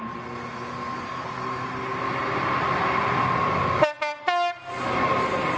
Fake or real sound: real